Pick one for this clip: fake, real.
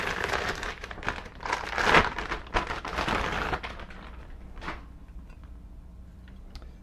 real